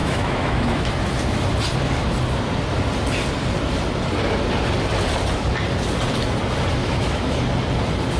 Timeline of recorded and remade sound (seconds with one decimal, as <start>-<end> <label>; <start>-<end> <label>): 0.0-0.9 remade; 0.9-6.8 recorded; 6.8-7.4 remade; 7.4-8.2 recorded